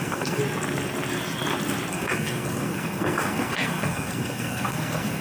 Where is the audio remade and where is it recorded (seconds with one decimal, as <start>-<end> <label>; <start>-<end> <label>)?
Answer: 0.0-0.4 remade; 0.4-1.9 recorded; 1.9-5.2 remade